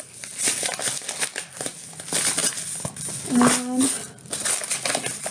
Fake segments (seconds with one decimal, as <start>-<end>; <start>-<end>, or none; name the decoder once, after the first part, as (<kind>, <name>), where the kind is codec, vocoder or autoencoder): none